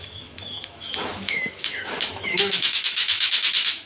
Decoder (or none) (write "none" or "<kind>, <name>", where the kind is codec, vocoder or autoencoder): autoencoder, DAC-VAE